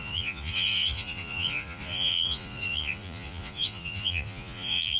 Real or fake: fake